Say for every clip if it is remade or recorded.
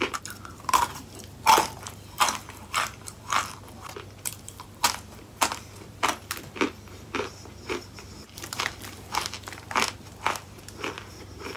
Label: remade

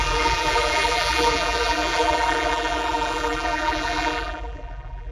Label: remade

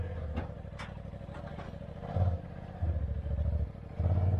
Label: recorded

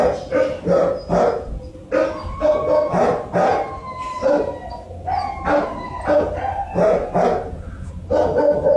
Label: recorded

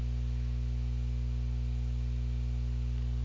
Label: recorded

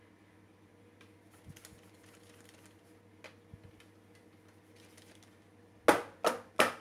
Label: recorded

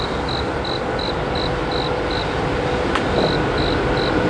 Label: recorded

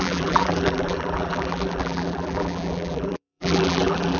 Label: remade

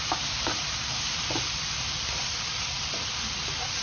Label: remade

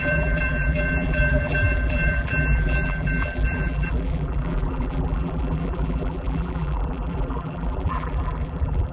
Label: remade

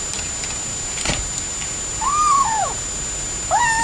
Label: recorded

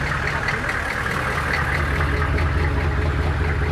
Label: recorded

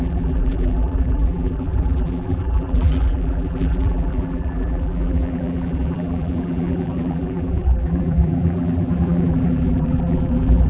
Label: remade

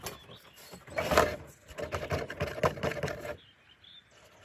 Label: recorded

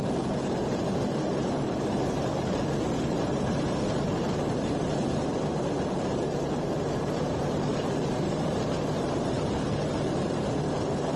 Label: remade